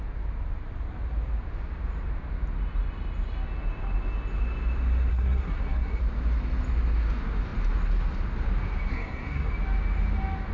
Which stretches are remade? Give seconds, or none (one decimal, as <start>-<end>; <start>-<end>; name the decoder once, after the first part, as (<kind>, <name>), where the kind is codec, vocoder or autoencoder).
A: 5.1-6.0 (codec, SNAC); 8.9-9.5

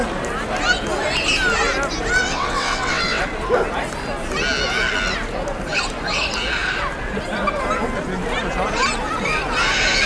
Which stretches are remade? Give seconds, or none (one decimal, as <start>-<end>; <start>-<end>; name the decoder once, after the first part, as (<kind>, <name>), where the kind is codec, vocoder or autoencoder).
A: 2.2-3.2 (vocoder, WaveNeXt)

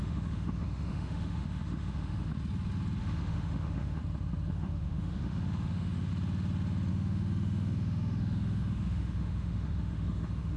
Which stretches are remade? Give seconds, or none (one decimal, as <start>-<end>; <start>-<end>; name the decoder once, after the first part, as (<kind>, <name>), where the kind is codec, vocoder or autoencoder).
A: 0.0-2.3 (autoencoder, DAC-VAE); 3.0-4.0; 4.5-6.1; 6.9-10.6

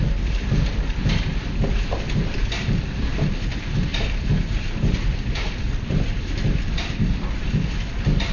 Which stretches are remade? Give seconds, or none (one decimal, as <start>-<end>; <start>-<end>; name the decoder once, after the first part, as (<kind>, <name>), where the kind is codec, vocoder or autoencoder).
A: 3.9-7.8 (vocoder, BigVGAN v2)

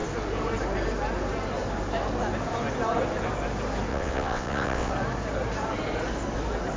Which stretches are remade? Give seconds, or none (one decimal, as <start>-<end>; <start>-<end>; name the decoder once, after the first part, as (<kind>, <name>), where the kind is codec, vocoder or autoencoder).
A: 3.9-4.9 (vocoder, WaveNeXt)